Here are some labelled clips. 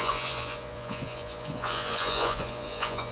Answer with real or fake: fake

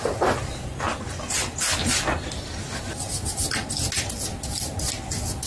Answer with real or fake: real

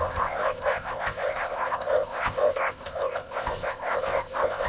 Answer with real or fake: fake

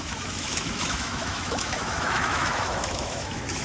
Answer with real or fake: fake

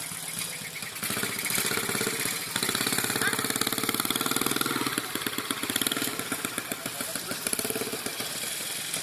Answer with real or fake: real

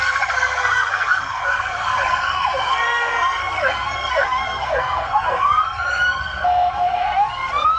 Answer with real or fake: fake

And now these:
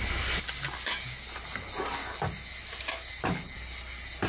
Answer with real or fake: real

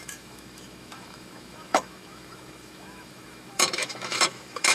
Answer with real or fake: fake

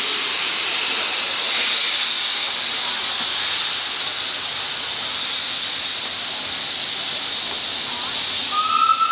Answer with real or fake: real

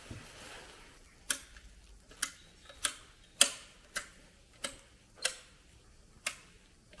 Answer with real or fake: real